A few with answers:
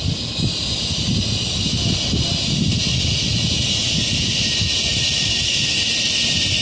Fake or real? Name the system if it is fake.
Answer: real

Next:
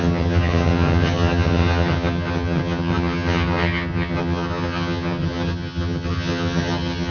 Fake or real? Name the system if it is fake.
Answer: fake, vocoder, HiFi-GAN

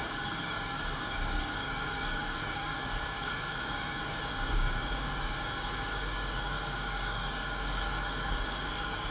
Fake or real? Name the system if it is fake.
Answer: fake, codec, DAC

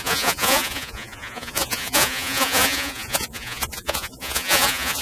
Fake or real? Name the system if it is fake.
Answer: fake, vocoder, Vocos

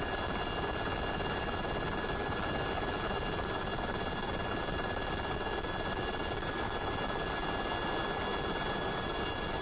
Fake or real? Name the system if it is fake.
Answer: real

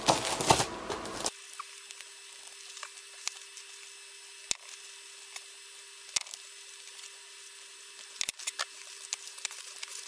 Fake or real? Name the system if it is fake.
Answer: real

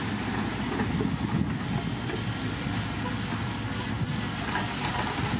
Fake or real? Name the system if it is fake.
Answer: real